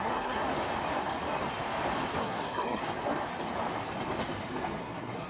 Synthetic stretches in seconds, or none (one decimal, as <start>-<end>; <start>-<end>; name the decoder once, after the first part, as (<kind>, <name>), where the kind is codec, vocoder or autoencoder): 0.0-0.4 (codec, SNAC); 2.2-2.8; 4.8-5.3